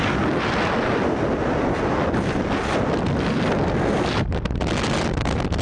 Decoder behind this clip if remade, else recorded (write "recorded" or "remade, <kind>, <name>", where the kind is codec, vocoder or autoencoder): recorded